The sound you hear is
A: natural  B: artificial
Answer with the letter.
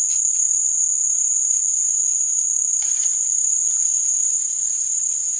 A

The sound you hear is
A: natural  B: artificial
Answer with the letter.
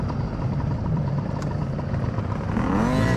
A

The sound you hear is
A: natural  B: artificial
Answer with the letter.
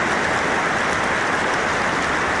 A